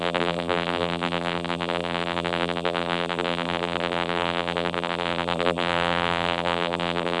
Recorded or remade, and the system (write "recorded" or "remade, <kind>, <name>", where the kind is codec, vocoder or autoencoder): remade, vocoder, BigVGAN v2